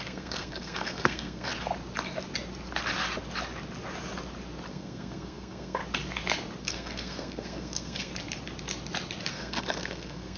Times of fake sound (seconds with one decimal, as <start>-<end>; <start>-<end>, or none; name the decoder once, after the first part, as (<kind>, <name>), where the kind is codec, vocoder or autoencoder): 0.0-1.5 (codec, SNAC); 4.7-5.8; 6.6-8.1; 9.3-10.4